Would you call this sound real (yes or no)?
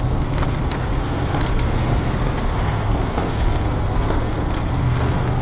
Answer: no